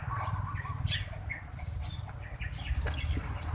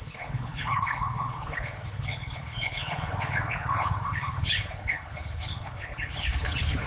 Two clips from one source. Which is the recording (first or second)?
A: first